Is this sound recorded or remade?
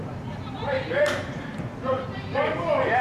remade